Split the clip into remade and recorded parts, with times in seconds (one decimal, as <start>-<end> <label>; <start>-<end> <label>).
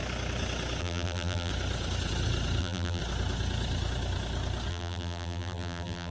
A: 0.0-0.8 recorded; 0.8-1.5 remade; 1.5-2.6 recorded; 2.6-3.0 remade; 3.0-4.7 recorded; 4.7-6.1 remade